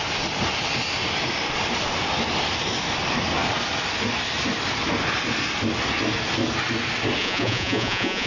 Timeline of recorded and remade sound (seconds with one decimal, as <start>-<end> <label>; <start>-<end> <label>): 0.0-7.2 recorded; 7.2-8.3 remade

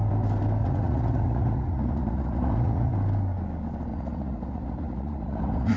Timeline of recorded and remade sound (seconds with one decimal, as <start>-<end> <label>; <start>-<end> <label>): 0.0-0.6 recorded; 0.6-2.9 remade; 2.9-3.9 recorded; 3.9-5.8 remade

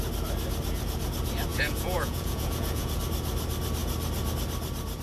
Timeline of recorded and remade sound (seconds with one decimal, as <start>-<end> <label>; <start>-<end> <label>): 0.0-1.5 recorded; 1.5-3.0 remade; 3.0-5.0 recorded

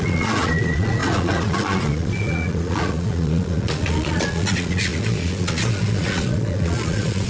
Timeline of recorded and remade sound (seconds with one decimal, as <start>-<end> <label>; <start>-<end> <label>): 0.0-7.3 remade

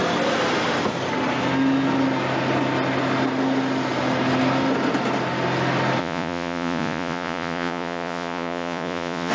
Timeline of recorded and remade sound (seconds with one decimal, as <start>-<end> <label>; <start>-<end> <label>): 0.0-6.0 recorded; 6.0-9.3 remade

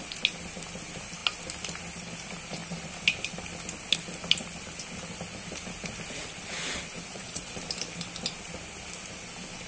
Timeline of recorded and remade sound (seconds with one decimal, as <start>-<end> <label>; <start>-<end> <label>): 0.0-7.1 recorded; 7.1-7.6 remade; 7.6-9.7 recorded

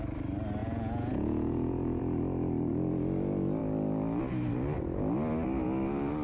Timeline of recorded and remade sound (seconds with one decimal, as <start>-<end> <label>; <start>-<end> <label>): 0.0-0.6 recorded; 0.6-2.0 remade; 2.0-6.2 recorded